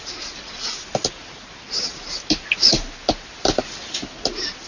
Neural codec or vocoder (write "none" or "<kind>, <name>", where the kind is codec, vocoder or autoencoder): none